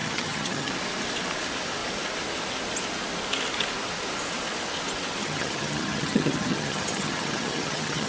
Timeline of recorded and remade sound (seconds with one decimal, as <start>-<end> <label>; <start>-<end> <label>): 0.0-0.7 remade; 0.7-5.2 recorded; 5.2-8.1 remade